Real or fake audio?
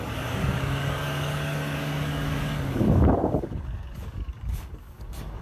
fake